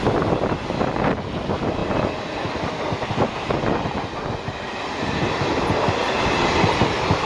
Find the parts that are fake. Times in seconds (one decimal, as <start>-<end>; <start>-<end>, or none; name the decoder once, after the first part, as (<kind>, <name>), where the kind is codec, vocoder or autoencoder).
none